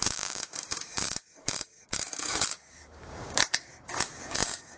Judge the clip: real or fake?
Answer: fake